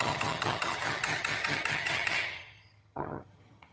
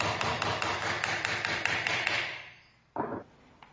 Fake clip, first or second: first